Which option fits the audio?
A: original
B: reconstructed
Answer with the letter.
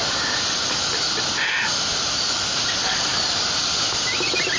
A